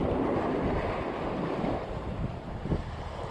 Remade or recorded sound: recorded